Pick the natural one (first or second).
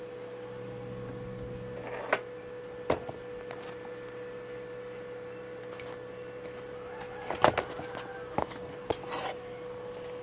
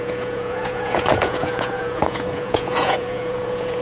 first